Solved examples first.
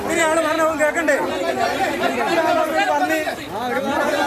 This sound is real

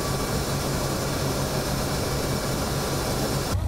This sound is real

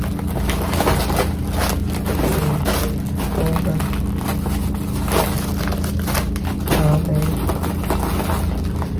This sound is real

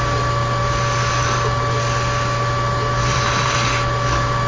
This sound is real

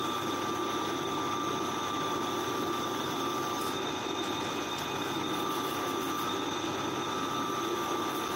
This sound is real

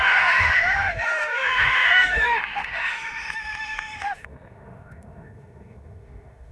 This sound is fake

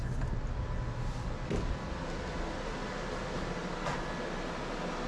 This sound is real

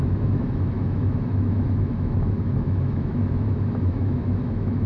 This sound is fake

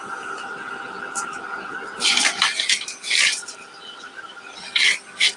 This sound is real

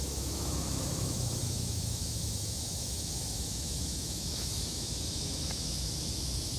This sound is fake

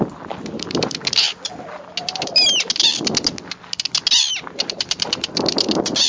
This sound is real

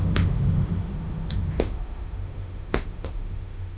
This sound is fake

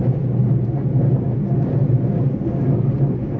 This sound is real